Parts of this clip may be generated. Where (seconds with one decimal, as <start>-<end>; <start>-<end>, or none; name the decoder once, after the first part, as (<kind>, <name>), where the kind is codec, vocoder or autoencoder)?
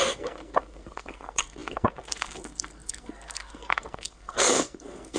0.0-5.2 (codec, SNAC)